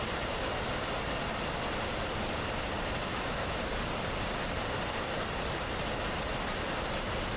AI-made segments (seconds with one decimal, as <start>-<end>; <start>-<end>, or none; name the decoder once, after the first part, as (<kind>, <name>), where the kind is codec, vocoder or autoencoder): 3.1-3.6 (autoencoder, DAC-VAE)